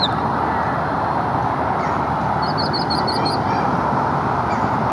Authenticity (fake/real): real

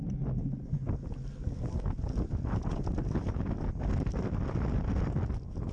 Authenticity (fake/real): real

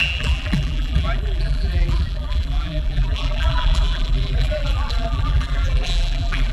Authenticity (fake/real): fake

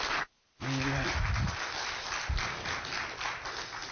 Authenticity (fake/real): real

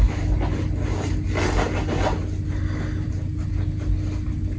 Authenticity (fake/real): real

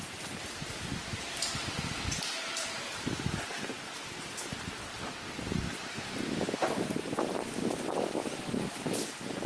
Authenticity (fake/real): fake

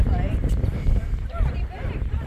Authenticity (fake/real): fake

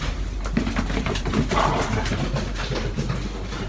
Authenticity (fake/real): fake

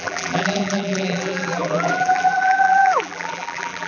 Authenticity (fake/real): fake